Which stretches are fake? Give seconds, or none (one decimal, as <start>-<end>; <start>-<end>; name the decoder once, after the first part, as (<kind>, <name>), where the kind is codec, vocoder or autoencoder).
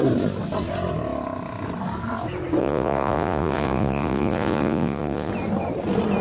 2.6-5.3 (vocoder, Vocos)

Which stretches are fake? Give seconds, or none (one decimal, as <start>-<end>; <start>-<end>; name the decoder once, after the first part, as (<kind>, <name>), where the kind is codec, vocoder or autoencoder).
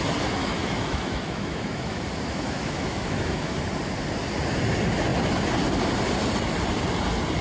0.4-3.6 (autoencoder, DAC-VAE)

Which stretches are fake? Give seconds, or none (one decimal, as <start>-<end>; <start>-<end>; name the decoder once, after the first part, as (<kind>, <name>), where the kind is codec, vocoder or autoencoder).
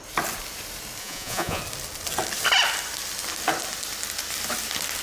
1.0-1.6 (vocoder, Vocos)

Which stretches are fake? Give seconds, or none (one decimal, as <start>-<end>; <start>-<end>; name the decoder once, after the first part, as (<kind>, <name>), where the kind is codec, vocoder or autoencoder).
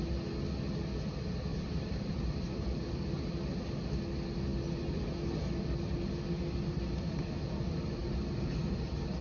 1.5-3.3 (vocoder, BigVGAN v2)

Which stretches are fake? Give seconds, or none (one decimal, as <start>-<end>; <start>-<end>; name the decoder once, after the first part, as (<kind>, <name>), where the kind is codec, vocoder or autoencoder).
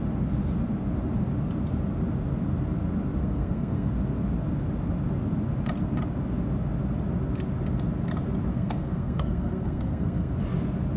3.2-3.9 (codec, SNAC); 8.5-10.3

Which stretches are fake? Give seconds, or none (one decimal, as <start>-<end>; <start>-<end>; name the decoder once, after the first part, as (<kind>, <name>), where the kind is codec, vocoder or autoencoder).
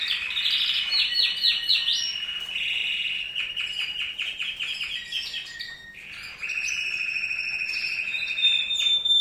8.4-9.2 (vocoder, BigVGAN v2)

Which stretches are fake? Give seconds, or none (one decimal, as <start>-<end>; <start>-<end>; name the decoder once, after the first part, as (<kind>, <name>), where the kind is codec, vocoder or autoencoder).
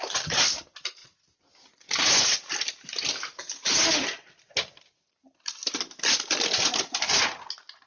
none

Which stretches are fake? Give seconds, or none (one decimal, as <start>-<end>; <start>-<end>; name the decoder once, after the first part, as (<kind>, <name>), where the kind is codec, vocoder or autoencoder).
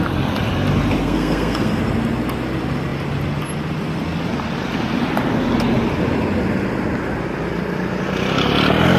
1.0-1.8 (codec, SNAC)